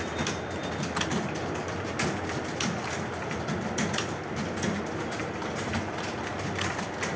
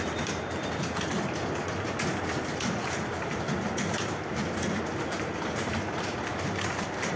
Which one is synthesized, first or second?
second